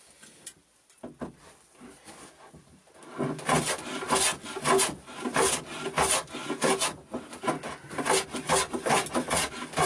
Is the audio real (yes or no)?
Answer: yes